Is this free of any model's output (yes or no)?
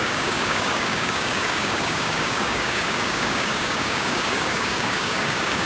no